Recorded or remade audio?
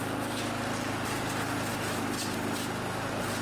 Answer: recorded